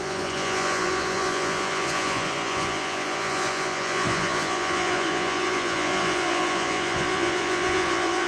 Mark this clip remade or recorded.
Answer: remade